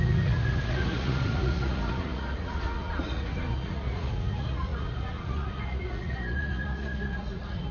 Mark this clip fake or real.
fake